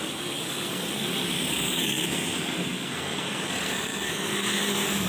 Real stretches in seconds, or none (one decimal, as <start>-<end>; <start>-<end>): none